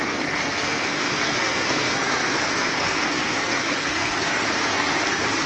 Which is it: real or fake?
fake